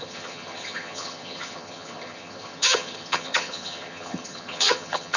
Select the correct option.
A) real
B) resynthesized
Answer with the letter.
B